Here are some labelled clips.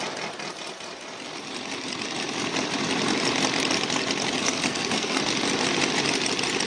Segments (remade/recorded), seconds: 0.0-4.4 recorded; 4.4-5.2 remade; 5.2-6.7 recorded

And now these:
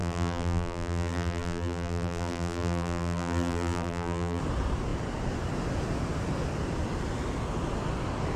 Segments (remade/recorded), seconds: 0.0-4.4 remade; 4.4-8.4 recorded

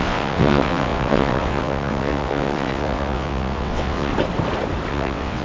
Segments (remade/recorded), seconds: 0.0-4.1 remade; 4.1-4.9 recorded; 4.9-5.4 remade

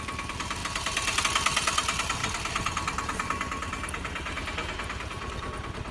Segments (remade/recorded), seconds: 0.0-2.2 recorded; 2.2-5.9 remade

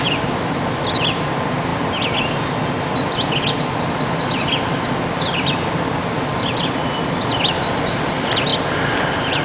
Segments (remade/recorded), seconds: 0.0-9.4 recorded

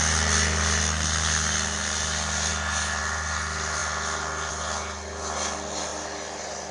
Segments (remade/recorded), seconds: 0.0-5.9 recorded; 5.9-6.7 remade

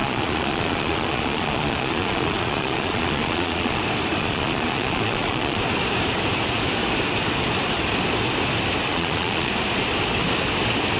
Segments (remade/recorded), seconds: 0.0-3.8 remade; 3.8-4.2 recorded; 4.2-5.6 remade; 5.6-8.9 recorded; 8.9-9.5 remade; 9.5-11.0 recorded